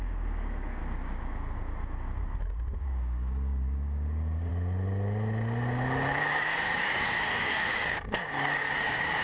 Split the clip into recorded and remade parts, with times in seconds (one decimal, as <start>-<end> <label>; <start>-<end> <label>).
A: 0.0-0.8 remade; 0.8-2.8 recorded; 2.8-4.5 remade; 4.5-6.2 recorded; 6.2-9.2 remade